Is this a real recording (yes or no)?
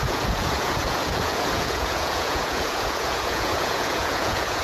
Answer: no